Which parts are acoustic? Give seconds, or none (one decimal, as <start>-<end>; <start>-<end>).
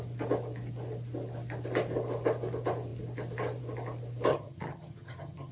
0.0-4.3